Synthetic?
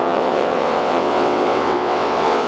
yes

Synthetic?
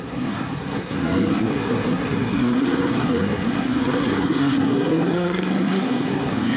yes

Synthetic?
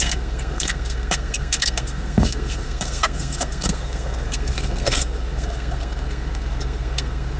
yes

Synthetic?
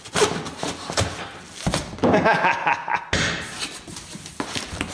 no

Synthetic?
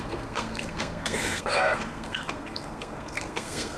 yes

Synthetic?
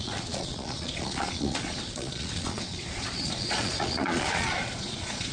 yes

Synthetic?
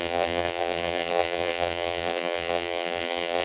yes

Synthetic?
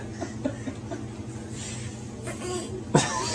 no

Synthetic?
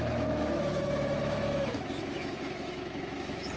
yes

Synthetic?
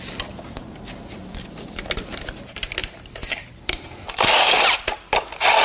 no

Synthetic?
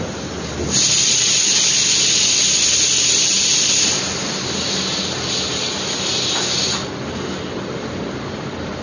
no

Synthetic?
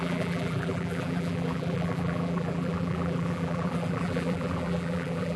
yes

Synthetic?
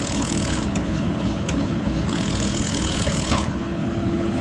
yes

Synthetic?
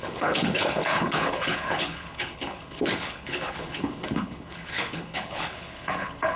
yes